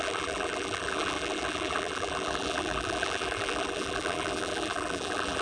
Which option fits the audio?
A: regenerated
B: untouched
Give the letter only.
A